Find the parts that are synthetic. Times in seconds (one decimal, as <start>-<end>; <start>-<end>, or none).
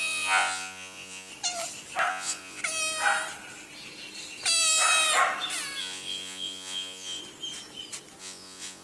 0.0-1.3; 2.1-2.6; 5.8-7.2; 8.2-8.8